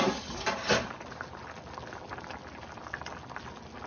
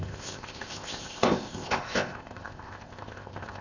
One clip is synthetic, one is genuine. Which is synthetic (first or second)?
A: second